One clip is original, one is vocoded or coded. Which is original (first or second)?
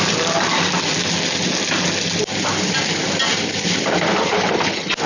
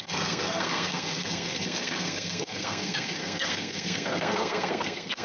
first